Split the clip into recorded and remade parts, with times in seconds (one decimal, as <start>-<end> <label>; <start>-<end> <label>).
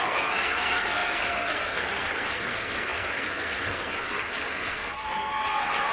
0.0-5.9 remade